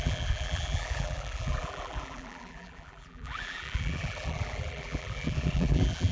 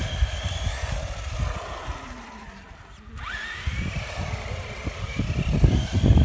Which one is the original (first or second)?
second